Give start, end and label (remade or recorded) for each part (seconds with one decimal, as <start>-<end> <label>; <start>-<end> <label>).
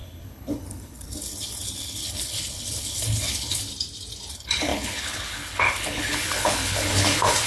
0.0-3.7 remade; 3.7-4.3 recorded; 4.3-7.5 remade